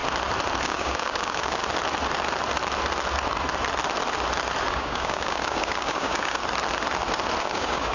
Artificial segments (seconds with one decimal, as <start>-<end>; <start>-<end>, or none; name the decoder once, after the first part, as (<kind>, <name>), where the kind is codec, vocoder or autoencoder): 0.6-1.6 (codec, DAC); 4.7-6.4; 7.4-7.9